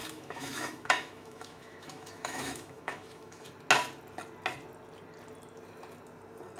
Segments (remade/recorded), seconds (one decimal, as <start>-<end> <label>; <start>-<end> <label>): 0.0-3.5 remade; 3.5-6.6 recorded